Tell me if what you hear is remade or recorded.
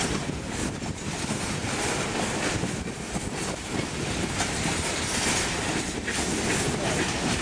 remade